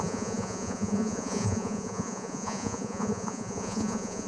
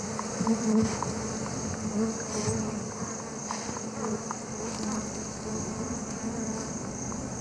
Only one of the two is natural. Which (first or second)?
second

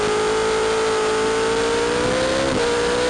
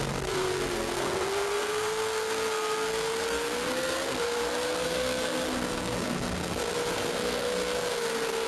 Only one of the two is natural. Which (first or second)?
first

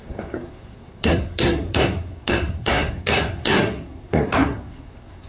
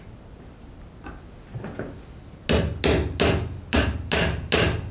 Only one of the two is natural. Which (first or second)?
second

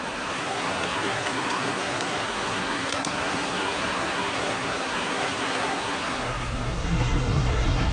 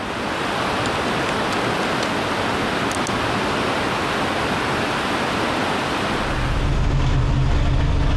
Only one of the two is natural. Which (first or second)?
second